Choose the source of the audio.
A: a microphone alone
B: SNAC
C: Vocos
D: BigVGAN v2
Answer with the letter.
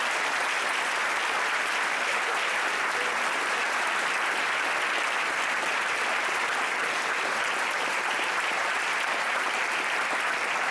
D